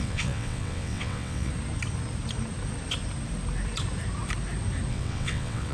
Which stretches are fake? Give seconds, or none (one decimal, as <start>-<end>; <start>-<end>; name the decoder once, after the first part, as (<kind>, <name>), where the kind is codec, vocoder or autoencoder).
0.0-1.5 (vocoder, WaveNeXt); 4.9-5.7